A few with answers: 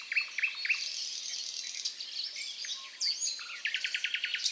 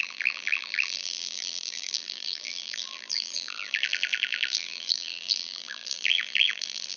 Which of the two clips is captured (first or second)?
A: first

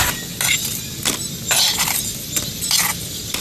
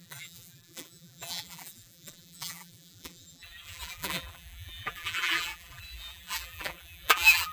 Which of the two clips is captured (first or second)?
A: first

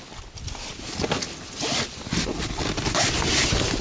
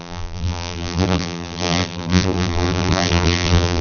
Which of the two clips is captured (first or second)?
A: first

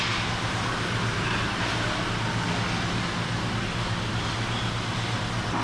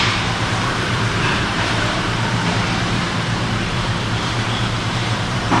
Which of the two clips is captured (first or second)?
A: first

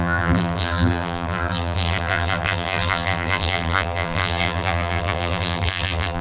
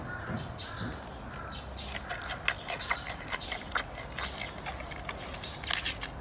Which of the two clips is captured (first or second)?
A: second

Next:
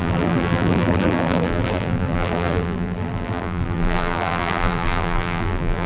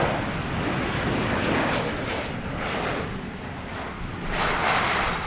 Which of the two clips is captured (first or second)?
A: second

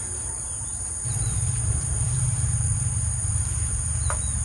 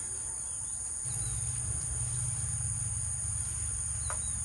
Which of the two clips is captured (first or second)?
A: second